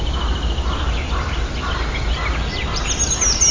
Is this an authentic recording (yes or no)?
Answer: yes